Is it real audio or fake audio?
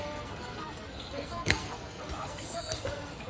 fake